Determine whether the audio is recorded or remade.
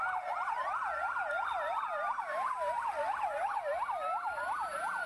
recorded